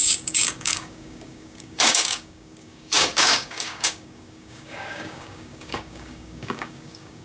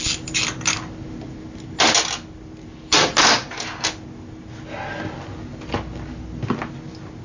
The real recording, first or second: second